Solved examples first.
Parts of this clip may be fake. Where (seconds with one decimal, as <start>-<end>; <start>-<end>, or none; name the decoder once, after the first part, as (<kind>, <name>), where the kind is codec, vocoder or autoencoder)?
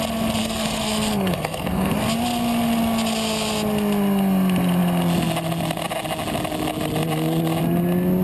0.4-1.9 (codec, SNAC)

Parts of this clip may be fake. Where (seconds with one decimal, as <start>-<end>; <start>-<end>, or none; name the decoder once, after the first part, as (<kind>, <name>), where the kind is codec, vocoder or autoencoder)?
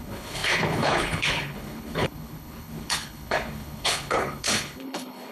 0.0-5.3 (codec, HILCodec)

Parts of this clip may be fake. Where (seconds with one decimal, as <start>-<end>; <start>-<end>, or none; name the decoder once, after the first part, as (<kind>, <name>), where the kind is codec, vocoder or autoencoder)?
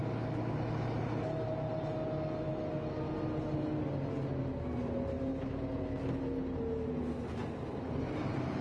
none